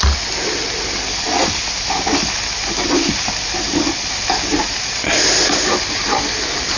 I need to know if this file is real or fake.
real